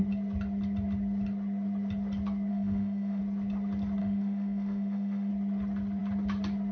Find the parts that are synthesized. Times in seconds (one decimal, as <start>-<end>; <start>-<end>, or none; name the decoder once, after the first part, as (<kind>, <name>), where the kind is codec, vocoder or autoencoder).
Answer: 2.5-3.2 (autoencoder, DAC-VAE); 4.0-5.3